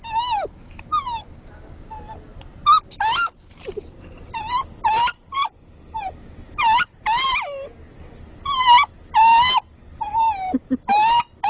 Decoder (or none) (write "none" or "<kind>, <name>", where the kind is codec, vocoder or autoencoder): none